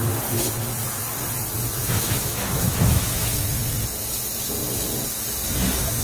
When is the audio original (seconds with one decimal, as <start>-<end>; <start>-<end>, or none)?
0.0-1.8; 3.5-6.0